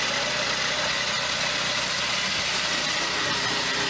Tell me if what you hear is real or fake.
real